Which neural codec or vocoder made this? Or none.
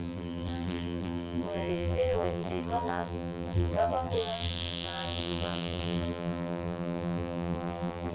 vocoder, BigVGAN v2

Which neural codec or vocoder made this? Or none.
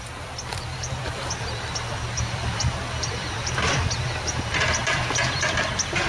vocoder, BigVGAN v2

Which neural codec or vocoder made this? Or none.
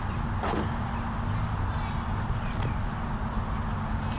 none